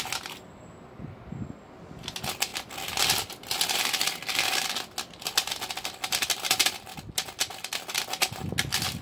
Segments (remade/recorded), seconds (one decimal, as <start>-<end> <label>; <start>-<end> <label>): 0.0-9.0 recorded